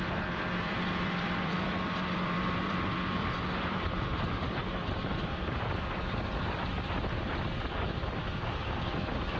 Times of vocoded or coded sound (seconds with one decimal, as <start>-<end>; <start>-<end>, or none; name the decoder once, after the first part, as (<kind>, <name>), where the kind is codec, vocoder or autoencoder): 0.0-8.3 (vocoder, BigVGAN v2)